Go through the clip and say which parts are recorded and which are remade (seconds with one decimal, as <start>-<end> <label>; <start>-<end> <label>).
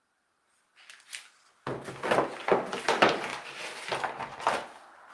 0.0-5.1 recorded